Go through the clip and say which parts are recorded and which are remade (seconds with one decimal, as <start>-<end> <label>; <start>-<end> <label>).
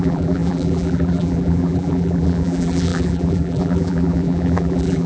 0.0-5.1 remade